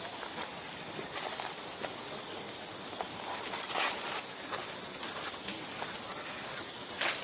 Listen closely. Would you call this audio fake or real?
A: real